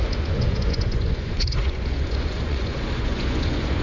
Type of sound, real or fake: fake